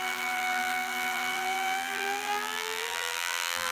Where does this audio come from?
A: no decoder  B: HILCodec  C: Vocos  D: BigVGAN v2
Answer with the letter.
D